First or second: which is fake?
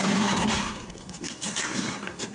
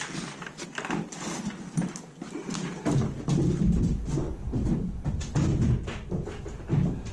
first